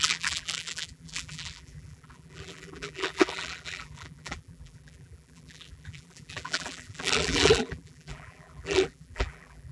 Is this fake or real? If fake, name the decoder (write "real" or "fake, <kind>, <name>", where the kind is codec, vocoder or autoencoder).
fake, vocoder, BigVGAN v2